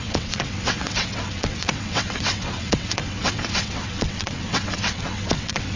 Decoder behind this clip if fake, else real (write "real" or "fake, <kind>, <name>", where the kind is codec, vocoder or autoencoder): fake, vocoder, WaveNeXt